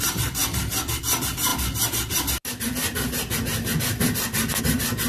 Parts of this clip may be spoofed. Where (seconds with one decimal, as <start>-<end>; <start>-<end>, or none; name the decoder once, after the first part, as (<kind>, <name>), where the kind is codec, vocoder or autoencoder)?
0.0-0.4 (vocoder, BigVGAN v2); 1.0-1.5; 4.6-5.1